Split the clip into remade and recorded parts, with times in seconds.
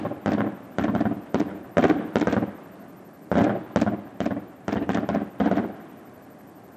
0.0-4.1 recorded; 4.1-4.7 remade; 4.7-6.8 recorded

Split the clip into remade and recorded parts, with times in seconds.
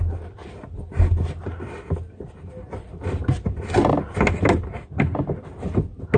0.0-6.2 recorded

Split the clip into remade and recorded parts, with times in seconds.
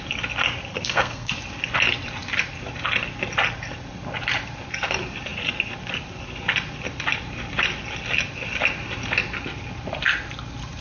0.0-0.7 recorded; 0.7-1.3 remade; 1.3-10.8 recorded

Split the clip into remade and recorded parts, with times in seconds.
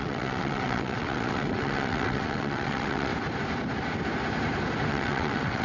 0.0-3.1 remade; 3.1-4.9 recorded; 4.9-5.6 remade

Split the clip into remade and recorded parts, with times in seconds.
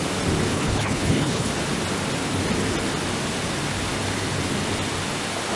0.0-0.5 recorded; 0.5-1.5 remade; 1.5-5.6 recorded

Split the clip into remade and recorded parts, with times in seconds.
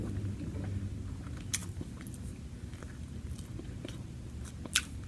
0.0-5.1 recorded